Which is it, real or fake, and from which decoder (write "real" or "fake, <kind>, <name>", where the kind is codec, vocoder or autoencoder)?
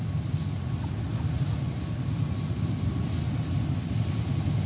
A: real